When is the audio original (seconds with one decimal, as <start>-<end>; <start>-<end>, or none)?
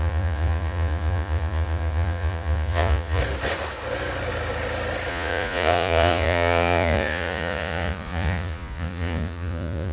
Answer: 3.2-5.1